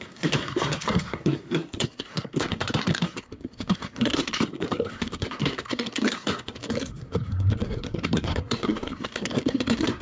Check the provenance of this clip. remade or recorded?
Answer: remade